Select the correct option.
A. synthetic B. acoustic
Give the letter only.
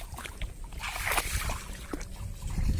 B